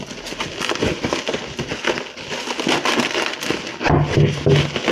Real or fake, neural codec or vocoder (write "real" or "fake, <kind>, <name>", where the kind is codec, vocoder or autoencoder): real